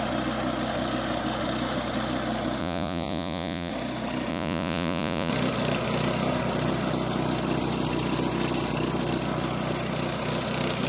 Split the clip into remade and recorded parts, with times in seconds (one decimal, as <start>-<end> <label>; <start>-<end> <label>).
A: 0.0-2.6 recorded; 2.6-3.7 remade; 3.7-4.3 recorded; 4.3-5.3 remade; 5.3-10.9 recorded